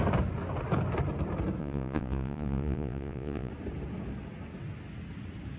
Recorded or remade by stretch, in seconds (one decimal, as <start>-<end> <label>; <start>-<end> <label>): 0.0-1.6 recorded; 1.6-3.5 remade; 3.5-5.6 recorded